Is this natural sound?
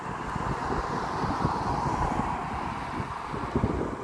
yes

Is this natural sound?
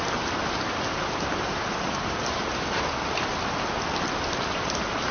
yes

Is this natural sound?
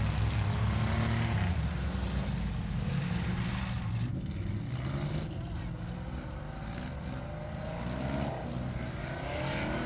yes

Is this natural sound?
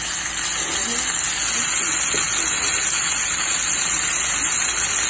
yes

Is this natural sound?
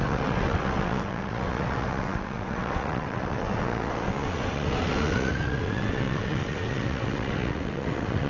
no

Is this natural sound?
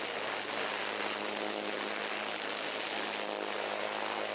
yes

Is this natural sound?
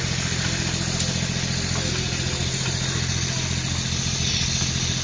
yes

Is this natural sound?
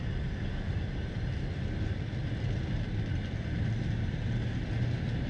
yes